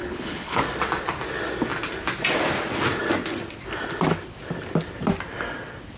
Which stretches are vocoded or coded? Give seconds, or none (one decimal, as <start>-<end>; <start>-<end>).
0.0-0.6